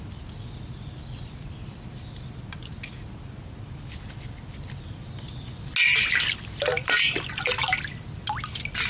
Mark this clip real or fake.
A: real